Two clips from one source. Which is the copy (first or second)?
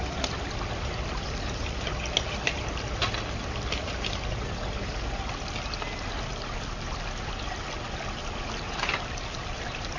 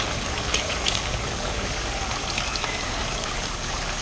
second